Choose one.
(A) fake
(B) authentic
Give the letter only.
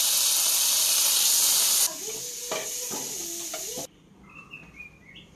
B